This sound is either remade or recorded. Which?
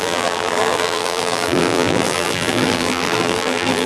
remade